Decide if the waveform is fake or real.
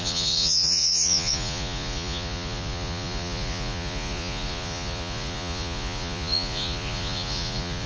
fake